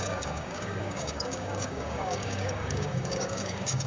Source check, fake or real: fake